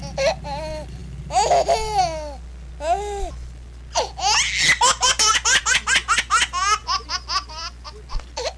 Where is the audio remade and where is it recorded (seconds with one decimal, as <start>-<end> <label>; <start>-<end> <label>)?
0.0-8.6 recorded